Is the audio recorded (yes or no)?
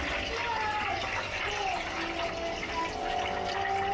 yes